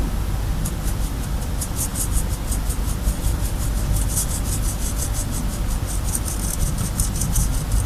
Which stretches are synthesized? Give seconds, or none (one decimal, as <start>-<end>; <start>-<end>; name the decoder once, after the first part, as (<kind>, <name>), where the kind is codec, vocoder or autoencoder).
none

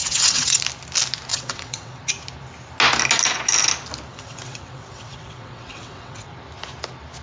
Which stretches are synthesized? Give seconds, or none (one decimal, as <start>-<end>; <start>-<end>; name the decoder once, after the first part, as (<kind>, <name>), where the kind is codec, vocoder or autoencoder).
0.0-0.6 (vocoder, WaveNeXt); 1.3-2.0; 4.1-6.3

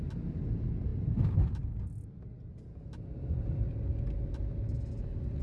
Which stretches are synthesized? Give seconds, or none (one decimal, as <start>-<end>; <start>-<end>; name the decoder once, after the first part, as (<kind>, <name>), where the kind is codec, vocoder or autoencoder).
none

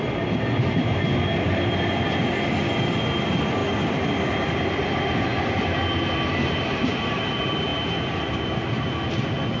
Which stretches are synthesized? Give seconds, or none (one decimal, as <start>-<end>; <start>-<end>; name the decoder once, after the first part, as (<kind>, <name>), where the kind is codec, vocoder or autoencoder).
5.3-6.5 (vocoder, BigVGAN v2); 7.7-8.2

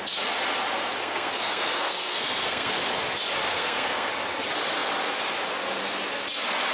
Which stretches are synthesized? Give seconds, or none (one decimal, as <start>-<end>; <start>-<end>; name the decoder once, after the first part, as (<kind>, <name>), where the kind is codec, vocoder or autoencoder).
1.0-2.7 (codec, SNAC); 3.5-4.1